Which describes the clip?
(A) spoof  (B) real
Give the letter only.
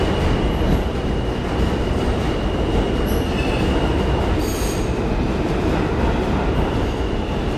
B